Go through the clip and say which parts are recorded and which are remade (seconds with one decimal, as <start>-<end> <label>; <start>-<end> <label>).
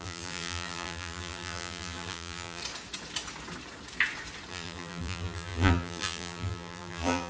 0.0-2.6 remade; 2.6-4.5 recorded; 4.5-7.3 remade